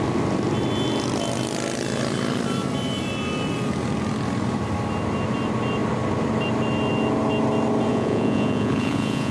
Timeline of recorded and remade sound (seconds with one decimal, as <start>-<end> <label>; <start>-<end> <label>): 0.0-7.9 recorded; 7.9-9.3 remade